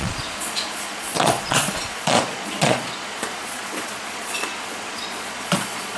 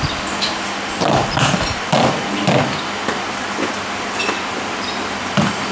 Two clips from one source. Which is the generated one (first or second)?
first